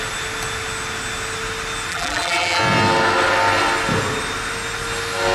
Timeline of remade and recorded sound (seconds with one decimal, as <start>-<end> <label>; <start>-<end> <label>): 0.0-1.9 recorded; 1.9-2.6 remade; 2.6-5.3 recorded